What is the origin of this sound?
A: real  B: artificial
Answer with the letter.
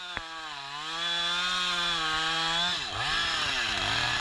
A